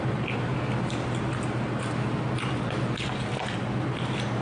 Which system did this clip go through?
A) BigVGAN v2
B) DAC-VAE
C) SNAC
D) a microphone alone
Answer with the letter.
D